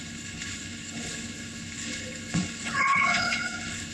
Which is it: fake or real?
fake